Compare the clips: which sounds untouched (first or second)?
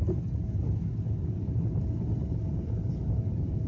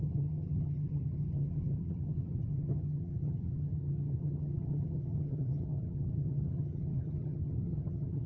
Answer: first